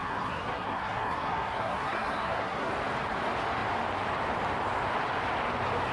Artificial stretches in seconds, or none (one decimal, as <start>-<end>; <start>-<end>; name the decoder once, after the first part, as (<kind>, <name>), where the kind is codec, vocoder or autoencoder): 0.0-2.7 (codec, SNAC)